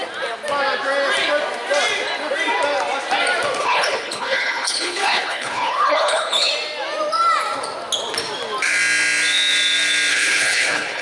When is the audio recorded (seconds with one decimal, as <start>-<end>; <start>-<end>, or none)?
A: 0.0-3.6; 6.5-10.1

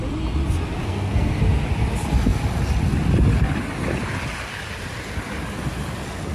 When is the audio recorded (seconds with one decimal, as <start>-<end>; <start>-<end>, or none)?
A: 0.0-0.8; 1.4-6.3

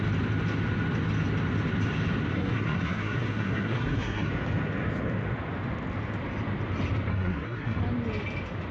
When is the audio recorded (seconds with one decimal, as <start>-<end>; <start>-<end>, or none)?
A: 0.0-2.3; 4.3-7.1; 7.8-8.7

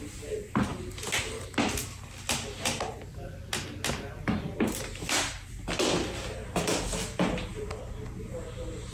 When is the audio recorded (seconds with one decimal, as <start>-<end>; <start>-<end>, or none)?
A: 0.0-7.5; 8.0-8.9

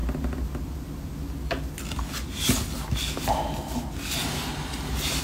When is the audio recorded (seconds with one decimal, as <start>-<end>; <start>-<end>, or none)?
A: 0.0-4.2

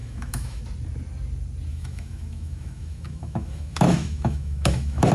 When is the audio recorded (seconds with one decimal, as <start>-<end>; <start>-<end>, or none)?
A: 0.6-1.7

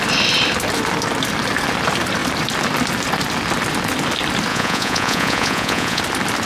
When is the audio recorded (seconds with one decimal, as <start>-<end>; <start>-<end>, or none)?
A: 0.0-4.5; 6.0-6.5